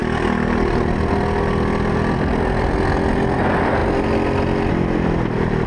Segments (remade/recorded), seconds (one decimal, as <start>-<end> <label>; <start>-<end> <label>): 0.0-5.7 recorded